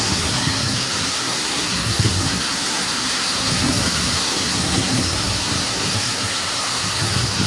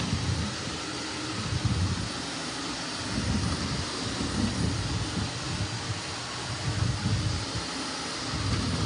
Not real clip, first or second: first